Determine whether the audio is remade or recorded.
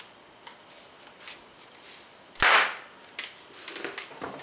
recorded